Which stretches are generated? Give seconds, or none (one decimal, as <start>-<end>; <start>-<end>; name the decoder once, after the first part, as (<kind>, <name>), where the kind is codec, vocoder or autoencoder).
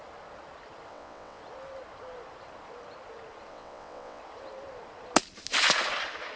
0.9-1.4 (vocoder, WaveNeXt); 3.5-4.2